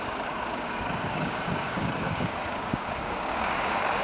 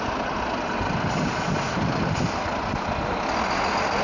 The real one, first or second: second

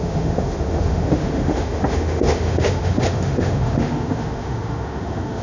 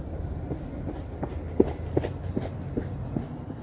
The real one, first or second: second